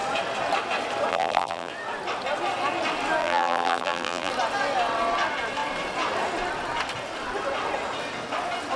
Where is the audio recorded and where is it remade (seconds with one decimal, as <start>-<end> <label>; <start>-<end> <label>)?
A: 0.0-1.1 recorded; 1.1-1.7 remade; 1.7-3.2 recorded; 3.2-4.3 remade; 4.3-8.8 recorded